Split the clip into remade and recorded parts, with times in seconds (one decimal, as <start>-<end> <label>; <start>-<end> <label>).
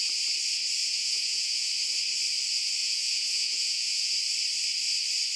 0.0-0.8 recorded; 0.8-1.7 remade; 1.7-2.8 recorded; 2.8-4.1 remade; 4.1-5.4 recorded